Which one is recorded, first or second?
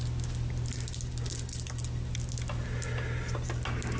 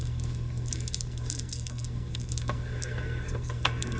first